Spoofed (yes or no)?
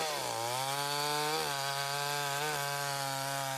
no